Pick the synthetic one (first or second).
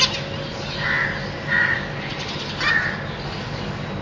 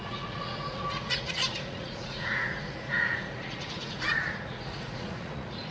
second